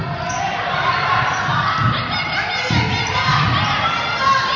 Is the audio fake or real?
real